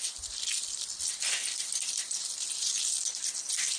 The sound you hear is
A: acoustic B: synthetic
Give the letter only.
A